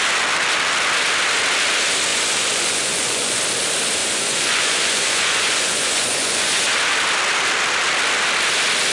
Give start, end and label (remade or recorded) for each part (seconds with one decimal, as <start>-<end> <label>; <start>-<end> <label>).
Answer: 0.0-2.1 recorded; 2.1-3.4 remade; 3.4-4.0 recorded; 4.0-6.6 remade; 6.6-8.9 recorded